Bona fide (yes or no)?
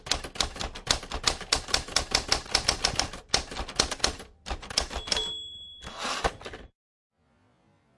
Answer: yes